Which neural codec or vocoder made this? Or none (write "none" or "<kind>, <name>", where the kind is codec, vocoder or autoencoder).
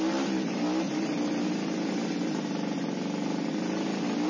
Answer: none